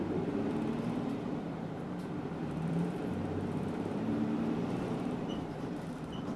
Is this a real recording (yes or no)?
no